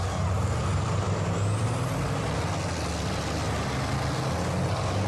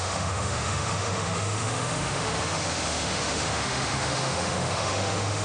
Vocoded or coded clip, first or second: second